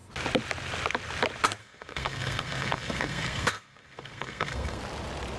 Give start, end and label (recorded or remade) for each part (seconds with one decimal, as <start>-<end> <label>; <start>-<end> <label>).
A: 0.0-1.6 recorded; 1.6-4.8 remade; 4.8-5.4 recorded